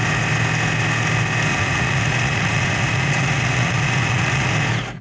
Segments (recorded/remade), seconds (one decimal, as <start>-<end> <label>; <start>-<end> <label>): 0.0-1.5 recorded; 1.5-4.5 remade; 4.5-5.0 recorded